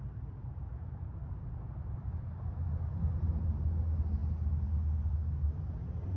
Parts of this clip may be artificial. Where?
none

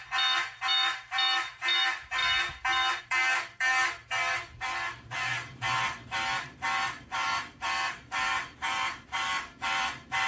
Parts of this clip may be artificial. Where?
0.0-2.2 (vocoder, BigVGAN v2); 3.0-10.3

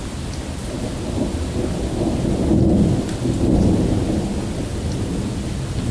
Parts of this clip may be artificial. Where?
none

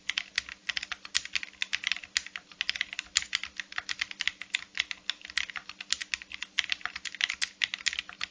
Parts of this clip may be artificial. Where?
none

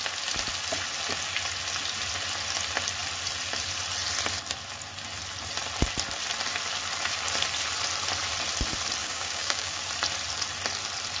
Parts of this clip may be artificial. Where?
9.0-9.8 (codec, DAC)

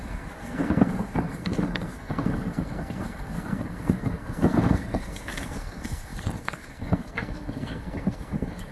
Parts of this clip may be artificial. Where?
0.0-8.7 (codec, SNAC)

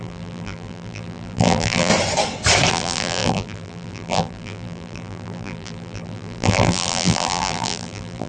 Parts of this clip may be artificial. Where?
0.0-1.9 (vocoder, BigVGAN v2); 2.7-8.3